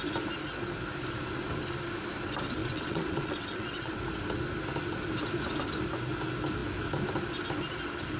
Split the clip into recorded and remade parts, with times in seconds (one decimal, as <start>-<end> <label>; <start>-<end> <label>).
0.0-2.6 recorded; 2.6-4.0 remade; 4.0-8.2 recorded